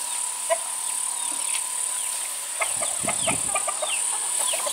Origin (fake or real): real